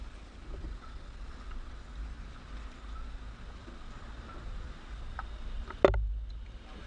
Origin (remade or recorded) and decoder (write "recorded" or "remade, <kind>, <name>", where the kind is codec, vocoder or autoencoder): recorded